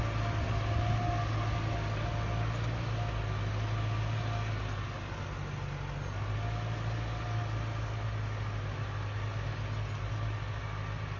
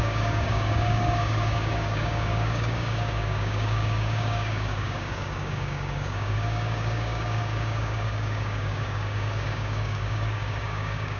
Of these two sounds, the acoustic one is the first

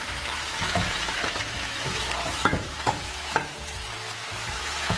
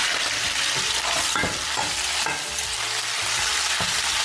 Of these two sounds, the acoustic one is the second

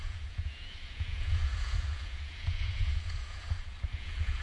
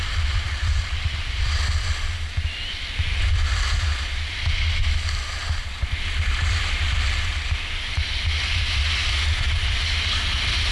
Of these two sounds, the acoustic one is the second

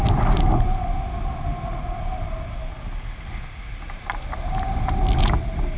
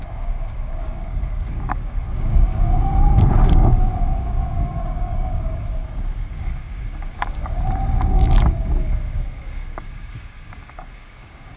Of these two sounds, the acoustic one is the first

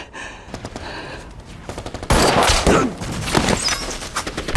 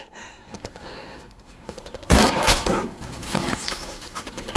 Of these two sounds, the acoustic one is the first